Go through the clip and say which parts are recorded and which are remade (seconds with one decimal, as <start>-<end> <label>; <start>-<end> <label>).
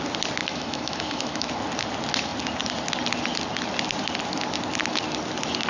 0.0-0.4 recorded; 0.4-1.5 remade; 1.5-5.7 recorded